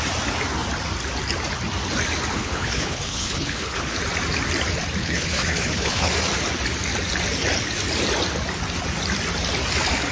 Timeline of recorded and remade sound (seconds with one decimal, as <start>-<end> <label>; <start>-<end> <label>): 0.0-2.4 recorded; 2.4-4.0 remade; 4.0-5.0 recorded; 5.0-6.1 remade; 6.1-10.1 recorded